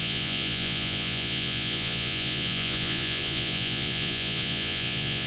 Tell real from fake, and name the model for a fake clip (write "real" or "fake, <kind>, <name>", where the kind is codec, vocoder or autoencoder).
fake, vocoder, Vocos